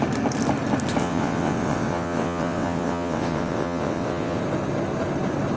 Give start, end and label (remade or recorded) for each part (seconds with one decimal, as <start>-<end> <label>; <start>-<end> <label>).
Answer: 0.0-1.0 recorded; 1.0-4.4 remade; 4.4-5.6 recorded

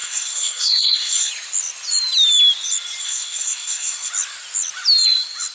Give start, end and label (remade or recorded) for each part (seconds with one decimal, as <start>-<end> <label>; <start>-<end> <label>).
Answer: 0.0-1.3 remade; 1.3-3.0 recorded; 3.0-4.1 remade; 4.1-5.5 recorded